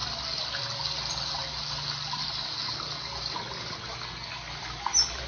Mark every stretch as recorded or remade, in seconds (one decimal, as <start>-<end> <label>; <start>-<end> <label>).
0.0-5.3 recorded